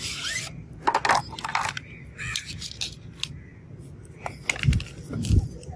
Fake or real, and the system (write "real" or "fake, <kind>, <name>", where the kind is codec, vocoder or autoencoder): real